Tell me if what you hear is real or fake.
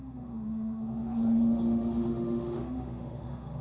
fake